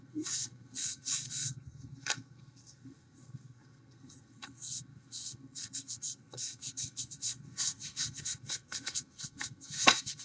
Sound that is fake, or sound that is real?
fake